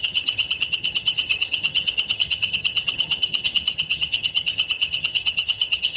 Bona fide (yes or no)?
no